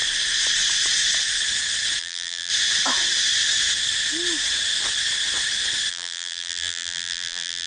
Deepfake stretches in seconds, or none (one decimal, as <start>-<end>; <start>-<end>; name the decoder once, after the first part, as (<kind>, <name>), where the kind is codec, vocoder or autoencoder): 2.0-2.5 (vocoder, BigVGAN v2); 5.9-7.7